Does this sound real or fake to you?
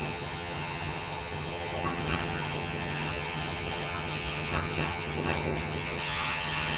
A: fake